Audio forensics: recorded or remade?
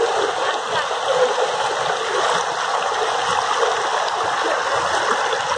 recorded